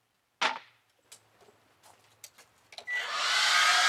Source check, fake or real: real